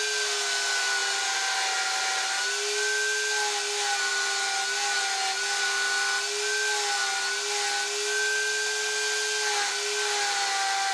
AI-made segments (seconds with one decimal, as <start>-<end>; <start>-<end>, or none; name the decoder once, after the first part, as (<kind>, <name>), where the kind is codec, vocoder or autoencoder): none